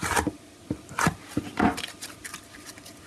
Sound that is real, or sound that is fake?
real